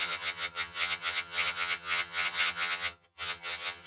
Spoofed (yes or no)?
yes